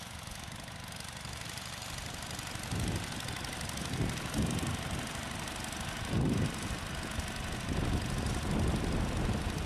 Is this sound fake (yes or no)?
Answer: no